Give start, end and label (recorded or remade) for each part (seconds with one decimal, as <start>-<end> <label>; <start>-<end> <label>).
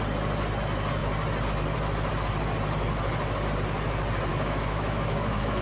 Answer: 0.0-4.3 recorded; 4.3-5.6 remade